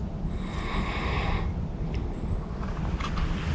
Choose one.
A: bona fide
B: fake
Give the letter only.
A